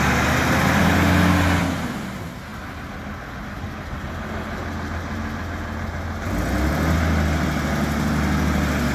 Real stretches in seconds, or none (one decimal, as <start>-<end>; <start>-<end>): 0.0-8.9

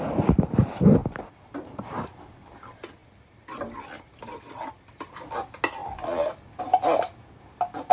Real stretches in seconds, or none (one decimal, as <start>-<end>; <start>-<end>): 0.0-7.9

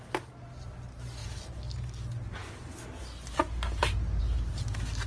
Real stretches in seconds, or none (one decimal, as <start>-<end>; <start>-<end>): 0.0-5.1